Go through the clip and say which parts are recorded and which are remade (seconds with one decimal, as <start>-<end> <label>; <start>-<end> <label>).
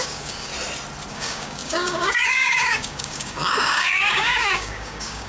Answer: 0.0-0.5 remade; 0.5-1.1 recorded; 1.1-5.3 remade